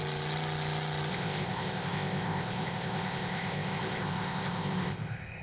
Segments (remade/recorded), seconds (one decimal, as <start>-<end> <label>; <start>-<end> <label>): 0.0-1.1 recorded; 1.1-5.4 remade